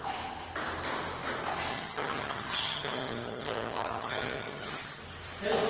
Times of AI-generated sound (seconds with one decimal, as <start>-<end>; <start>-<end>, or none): 1.7-5.0